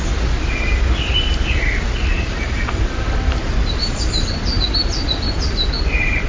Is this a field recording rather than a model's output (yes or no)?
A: yes